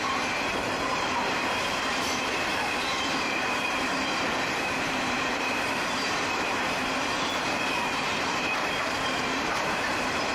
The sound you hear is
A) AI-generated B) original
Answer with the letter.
A